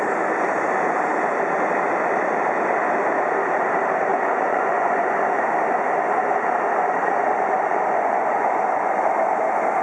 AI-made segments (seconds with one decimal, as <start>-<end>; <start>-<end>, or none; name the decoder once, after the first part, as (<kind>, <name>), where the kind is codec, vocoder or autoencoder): 4.1-5.4 (vocoder, Vocos); 7.0-9.3